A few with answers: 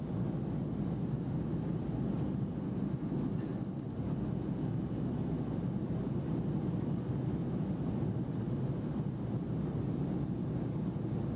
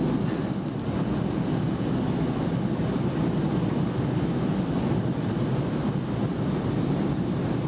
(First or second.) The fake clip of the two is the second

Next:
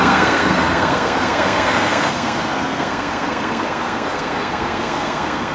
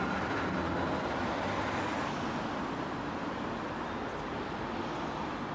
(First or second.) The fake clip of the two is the first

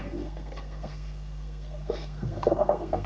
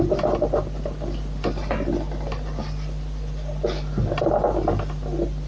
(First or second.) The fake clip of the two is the first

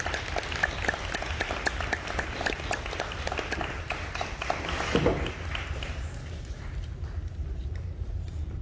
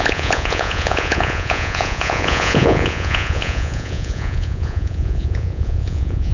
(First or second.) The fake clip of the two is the second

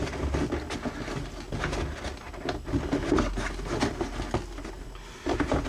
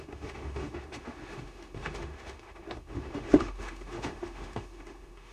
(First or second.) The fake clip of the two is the second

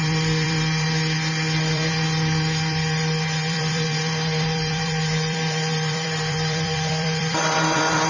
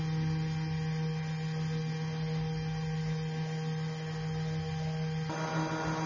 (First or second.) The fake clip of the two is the first